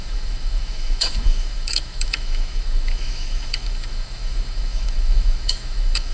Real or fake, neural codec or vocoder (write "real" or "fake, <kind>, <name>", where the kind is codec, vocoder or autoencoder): fake, autoencoder, DAC-VAE